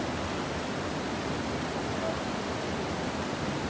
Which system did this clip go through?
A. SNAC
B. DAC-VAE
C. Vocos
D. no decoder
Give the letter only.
D